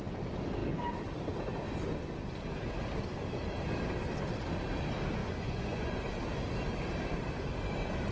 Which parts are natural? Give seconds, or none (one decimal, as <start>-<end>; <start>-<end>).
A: 0.0-5.2; 6.0-8.1

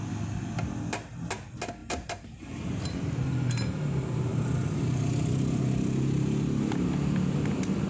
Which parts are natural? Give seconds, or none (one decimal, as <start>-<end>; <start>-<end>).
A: 0.0-1.8; 3.0-4.3; 5.6-7.9

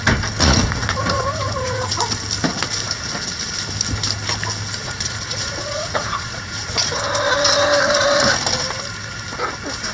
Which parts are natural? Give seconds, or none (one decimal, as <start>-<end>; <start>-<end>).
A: 0.0-0.4; 1.9-4.8; 7.0-9.9

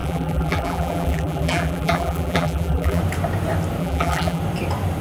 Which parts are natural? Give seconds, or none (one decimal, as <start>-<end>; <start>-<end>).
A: 3.0-3.8; 4.4-5.0